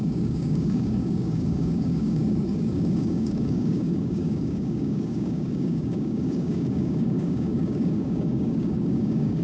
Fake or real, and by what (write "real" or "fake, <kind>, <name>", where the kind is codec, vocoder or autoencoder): fake, codec, DAC